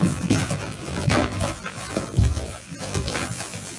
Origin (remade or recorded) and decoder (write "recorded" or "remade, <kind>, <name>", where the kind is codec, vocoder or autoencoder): remade, vocoder, BigVGAN v2